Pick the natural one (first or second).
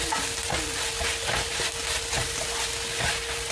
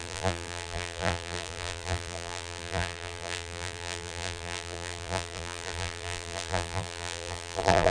first